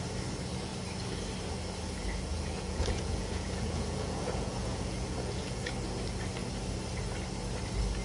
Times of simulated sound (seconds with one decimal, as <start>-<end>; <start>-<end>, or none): 2.3-5.7